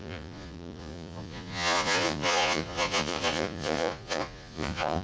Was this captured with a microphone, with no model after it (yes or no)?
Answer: no